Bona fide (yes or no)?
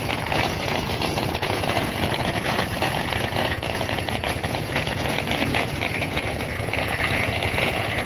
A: no